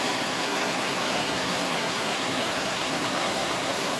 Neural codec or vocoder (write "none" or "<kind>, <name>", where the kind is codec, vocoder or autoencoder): codec, SNAC